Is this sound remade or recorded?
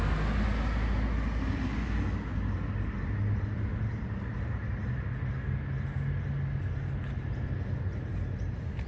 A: recorded